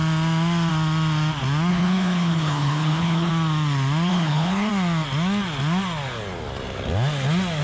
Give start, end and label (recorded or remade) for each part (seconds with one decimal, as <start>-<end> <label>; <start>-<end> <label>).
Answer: 0.0-1.7 recorded; 1.7-3.3 remade; 3.3-4.1 recorded; 4.1-4.7 remade; 4.7-7.6 recorded